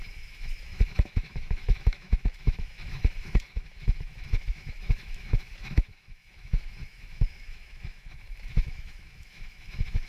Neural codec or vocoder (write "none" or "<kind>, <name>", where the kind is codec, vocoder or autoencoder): autoencoder, DAC-VAE